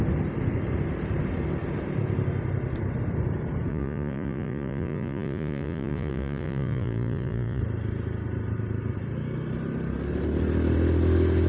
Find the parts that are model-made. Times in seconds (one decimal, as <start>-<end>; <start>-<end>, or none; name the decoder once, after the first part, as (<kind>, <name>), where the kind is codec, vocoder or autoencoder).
3.7-7.6 (vocoder, Vocos)